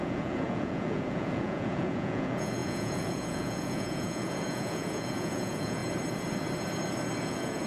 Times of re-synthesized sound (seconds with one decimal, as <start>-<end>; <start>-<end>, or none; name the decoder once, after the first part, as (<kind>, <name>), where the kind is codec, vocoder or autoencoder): 0.0-5.8 (vocoder, Vocos); 7.2-7.7